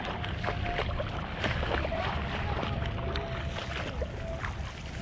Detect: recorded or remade recorded